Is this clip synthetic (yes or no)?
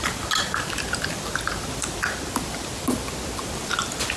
no